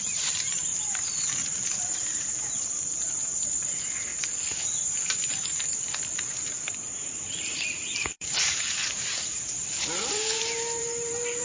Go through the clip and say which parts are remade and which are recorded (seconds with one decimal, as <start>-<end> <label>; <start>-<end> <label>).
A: 0.0-4.1 remade; 4.1-5.3 recorded; 5.3-11.4 remade